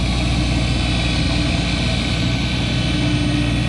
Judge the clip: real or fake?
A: real